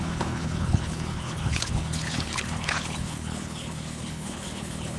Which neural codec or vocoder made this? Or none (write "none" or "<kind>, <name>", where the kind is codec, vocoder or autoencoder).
codec, HILCodec